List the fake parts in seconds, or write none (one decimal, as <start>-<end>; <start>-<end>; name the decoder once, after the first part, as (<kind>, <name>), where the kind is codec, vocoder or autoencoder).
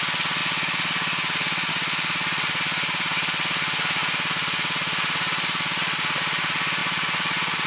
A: 0.0-0.4 (vocoder, BigVGAN v2); 1.7-7.7